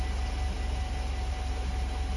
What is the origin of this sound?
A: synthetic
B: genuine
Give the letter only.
B